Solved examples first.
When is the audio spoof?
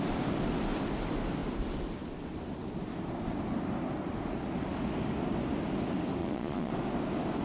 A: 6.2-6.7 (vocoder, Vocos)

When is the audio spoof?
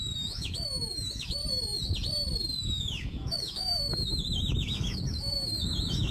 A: 0.0-1.4 (autoencoder, DAC-VAE); 2.6-6.1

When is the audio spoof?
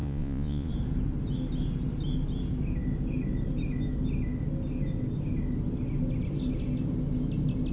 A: 0.0-0.7 (vocoder, Vocos)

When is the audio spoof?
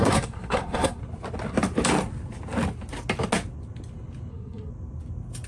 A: 0.0-1.0 (codec, SNAC); 4.3-4.7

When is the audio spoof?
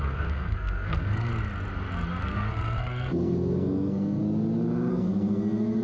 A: 0.0-1.3 (codec, SNAC); 2.2-4.2; 4.9-5.8